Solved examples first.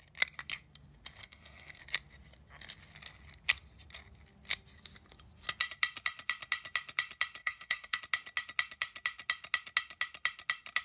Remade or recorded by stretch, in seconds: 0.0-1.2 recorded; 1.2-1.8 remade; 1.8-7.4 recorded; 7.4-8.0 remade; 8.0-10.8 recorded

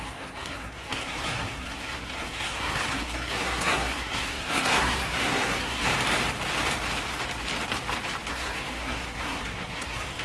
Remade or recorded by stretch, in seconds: 0.0-5.9 remade; 5.9-8.3 recorded; 8.3-10.2 remade

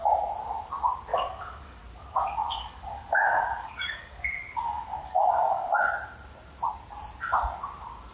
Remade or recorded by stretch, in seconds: 0.0-1.1 recorded; 1.1-1.8 remade; 1.8-2.4 recorded; 2.4-5.9 remade; 5.9-8.1 recorded

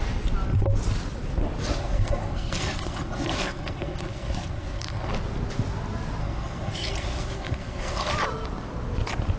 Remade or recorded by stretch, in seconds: 0.0-1.7 recorded; 1.7-5.1 remade; 5.1-6.2 recorded; 6.2-8.1 remade; 8.1-9.4 recorded

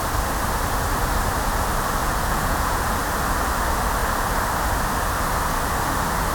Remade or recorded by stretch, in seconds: 0.0-2.0 recorded; 2.0-3.0 remade; 3.0-6.3 recorded